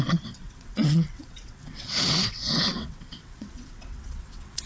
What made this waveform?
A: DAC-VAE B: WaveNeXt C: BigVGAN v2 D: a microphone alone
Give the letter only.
B